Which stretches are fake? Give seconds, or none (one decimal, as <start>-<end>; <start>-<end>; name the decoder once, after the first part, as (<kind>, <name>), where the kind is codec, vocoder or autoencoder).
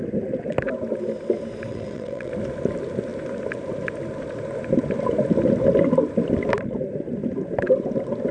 1.7-2.3 (vocoder, WaveNeXt)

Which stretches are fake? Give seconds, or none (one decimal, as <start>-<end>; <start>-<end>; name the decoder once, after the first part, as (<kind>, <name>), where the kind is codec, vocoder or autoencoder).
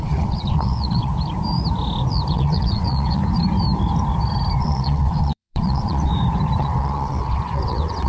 0.0-1.1 (vocoder, WaveNeXt); 2.3-3.2; 4.6-6.1; 6.6-8.1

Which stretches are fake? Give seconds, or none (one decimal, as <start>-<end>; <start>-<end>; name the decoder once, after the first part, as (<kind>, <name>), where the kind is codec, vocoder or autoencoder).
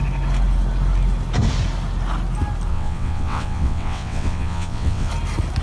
2.7-5.1 (vocoder, WaveNeXt)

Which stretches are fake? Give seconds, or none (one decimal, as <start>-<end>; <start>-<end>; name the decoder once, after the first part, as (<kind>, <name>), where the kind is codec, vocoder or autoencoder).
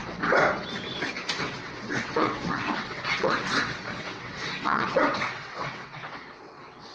1.4-6.9 (vocoder, WaveNeXt)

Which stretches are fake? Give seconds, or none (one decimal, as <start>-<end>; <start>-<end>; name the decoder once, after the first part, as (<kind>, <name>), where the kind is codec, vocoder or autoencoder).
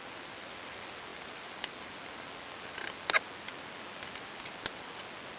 none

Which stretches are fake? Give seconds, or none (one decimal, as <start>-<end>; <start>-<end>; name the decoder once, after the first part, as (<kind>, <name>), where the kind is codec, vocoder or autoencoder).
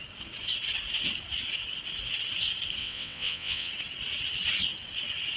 2.8-3.7 (vocoder, WaveNeXt)